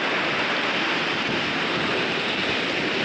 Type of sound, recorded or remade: recorded